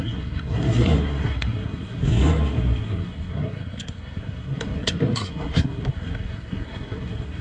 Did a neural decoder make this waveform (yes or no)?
yes